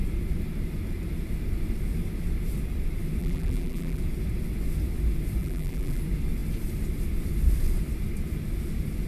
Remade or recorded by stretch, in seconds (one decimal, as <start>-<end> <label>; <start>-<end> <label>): 0.0-3.2 recorded; 3.2-4.0 remade; 4.0-5.4 recorded; 5.4-6.0 remade; 6.0-9.1 recorded